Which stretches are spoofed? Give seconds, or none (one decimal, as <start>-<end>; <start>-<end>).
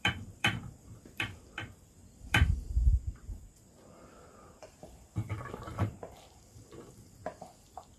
0.0-8.0